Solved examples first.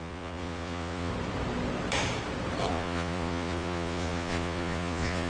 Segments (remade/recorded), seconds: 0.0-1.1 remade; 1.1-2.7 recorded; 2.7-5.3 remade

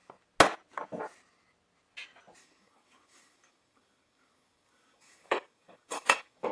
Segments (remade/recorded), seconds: 0.0-2.4 recorded; 2.4-6.5 remade